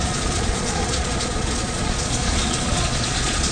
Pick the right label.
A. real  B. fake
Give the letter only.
B